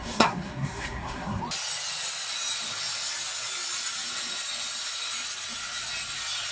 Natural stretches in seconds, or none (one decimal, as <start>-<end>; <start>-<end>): 1.4-6.5